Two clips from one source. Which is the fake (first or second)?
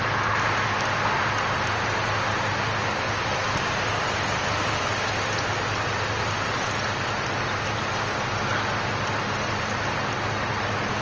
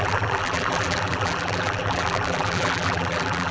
second